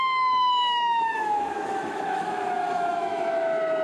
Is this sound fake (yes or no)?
yes